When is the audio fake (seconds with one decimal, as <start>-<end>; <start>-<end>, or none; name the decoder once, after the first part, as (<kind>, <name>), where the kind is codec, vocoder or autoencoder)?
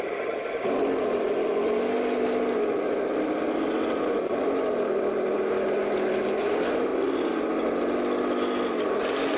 none